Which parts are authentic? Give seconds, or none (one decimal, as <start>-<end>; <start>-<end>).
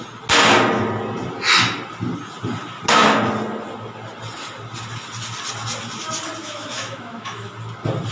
0.0-6.4; 7.5-8.1